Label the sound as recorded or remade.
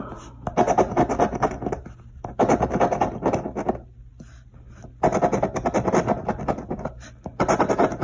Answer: recorded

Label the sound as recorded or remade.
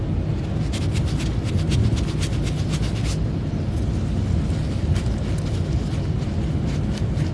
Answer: recorded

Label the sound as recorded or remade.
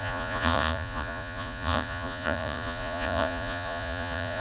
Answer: remade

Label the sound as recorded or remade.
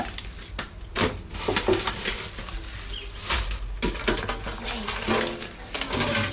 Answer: recorded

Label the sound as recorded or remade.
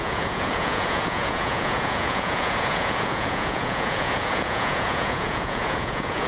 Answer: remade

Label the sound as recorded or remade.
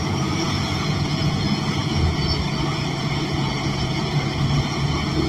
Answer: remade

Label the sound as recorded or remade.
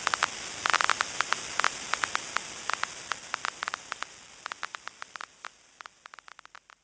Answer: recorded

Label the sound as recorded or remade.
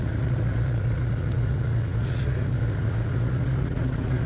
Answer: remade